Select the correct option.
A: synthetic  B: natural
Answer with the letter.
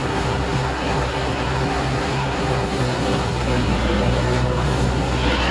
A